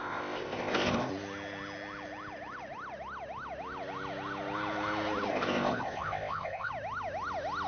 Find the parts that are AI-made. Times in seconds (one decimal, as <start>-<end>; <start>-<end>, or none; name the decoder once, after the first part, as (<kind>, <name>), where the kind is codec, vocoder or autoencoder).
0.0-1.1 (codec, ZipCodec); 5.3-6.7